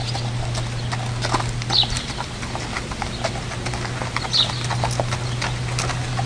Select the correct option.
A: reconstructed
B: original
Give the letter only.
B